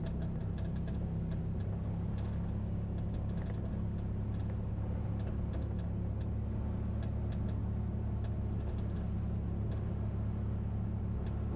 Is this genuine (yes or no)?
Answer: yes